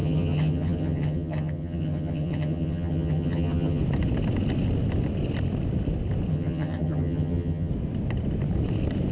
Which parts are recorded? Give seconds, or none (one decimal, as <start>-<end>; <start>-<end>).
3.8-6.3; 7.7-9.1